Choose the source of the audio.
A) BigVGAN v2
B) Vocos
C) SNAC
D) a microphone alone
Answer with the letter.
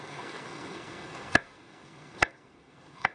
C